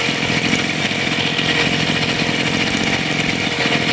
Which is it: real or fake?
real